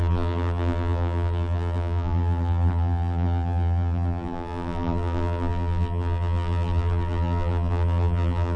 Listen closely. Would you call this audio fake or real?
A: fake